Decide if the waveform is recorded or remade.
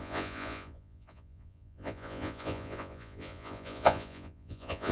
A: remade